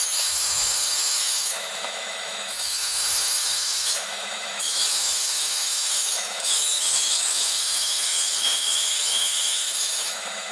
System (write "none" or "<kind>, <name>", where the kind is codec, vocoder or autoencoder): autoencoder, DAC-VAE